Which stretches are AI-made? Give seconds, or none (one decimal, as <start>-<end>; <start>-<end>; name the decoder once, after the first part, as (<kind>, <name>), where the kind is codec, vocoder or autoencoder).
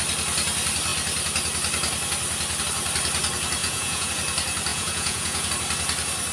3.6-4.1 (vocoder, Vocos); 4.7-5.5